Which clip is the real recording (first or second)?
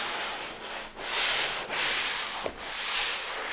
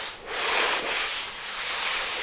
first